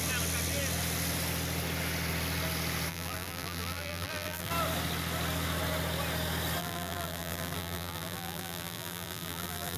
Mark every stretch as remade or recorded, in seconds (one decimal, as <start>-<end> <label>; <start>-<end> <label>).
0.0-2.9 recorded; 2.9-4.5 remade; 4.5-6.6 recorded; 6.6-9.8 remade